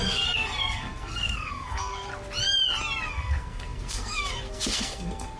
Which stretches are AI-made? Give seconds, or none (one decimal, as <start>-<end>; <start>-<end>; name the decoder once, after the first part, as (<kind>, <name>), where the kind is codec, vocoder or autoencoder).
0.0-2.1 (codec, SNAC); 3.1-5.4